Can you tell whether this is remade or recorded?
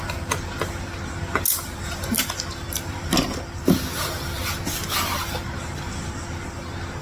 recorded